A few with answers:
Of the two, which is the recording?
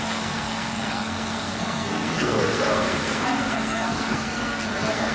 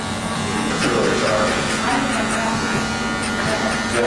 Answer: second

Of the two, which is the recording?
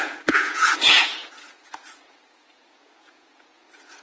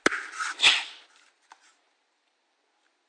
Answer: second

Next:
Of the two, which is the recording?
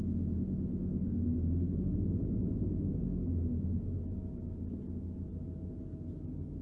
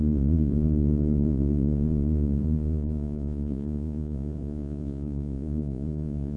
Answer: first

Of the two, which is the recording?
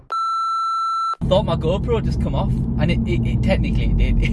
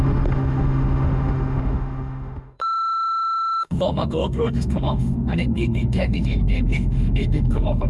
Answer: first